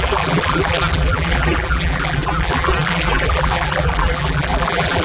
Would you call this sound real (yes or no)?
no